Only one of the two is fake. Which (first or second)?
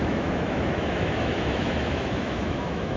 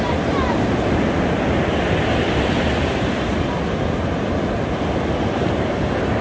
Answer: first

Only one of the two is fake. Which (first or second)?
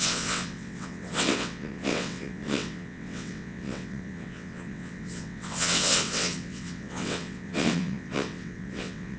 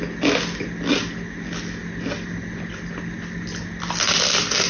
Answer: first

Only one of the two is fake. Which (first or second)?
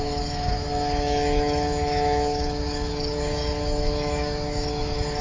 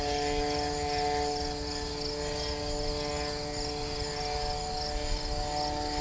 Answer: first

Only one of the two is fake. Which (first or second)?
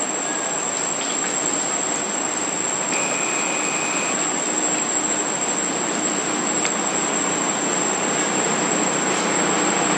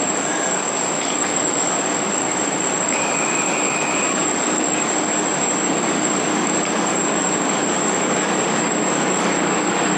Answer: second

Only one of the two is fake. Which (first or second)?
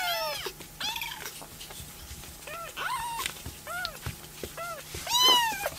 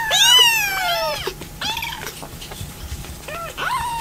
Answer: second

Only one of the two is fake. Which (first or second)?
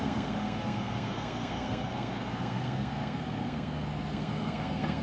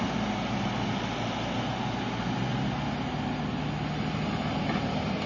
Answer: first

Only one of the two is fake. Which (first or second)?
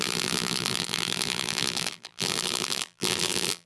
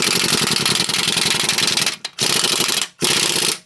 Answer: first